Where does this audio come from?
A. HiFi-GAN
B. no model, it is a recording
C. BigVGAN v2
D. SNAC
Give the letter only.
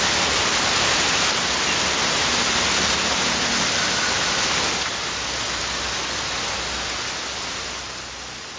B